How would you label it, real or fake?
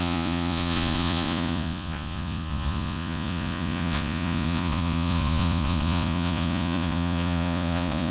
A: fake